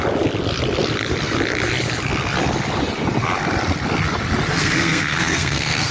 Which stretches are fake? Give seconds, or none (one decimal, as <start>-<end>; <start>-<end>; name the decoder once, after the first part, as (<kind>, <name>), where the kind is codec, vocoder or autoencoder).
4.5-5.9 (codec, SNAC)